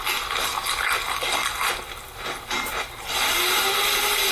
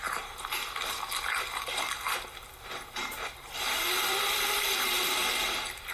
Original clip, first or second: first